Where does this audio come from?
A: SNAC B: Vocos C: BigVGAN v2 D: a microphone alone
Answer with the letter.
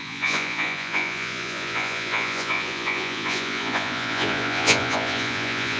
B